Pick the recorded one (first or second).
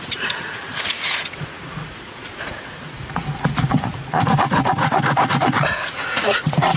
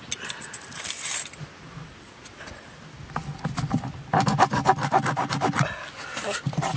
second